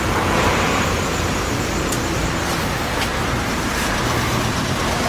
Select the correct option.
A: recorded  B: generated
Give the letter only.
B